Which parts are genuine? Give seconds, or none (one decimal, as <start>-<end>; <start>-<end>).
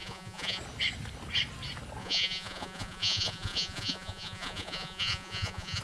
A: 0.6-2.0